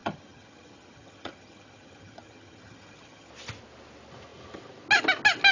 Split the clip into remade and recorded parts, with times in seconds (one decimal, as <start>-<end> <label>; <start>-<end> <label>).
0.0-3.3 remade; 3.3-5.5 recorded